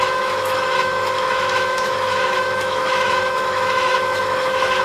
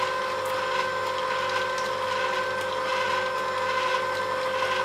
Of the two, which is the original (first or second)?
second